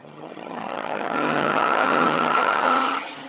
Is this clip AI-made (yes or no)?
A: yes